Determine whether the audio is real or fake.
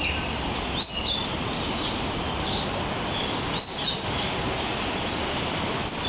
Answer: real